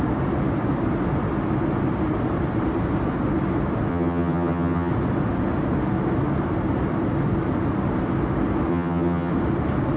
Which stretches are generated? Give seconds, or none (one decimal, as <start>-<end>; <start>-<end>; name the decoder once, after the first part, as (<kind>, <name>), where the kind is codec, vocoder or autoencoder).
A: 3.9-4.9 (vocoder, HiFi-GAN); 8.7-9.3